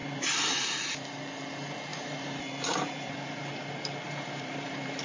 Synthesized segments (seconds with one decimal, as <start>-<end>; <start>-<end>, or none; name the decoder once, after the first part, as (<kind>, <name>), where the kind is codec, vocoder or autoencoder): 0.0-1.1 (vocoder, BigVGAN v2); 1.9-5.0